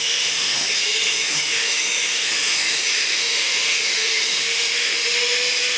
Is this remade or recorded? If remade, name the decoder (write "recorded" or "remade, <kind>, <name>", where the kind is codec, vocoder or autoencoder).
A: remade, autoencoder, DAC-VAE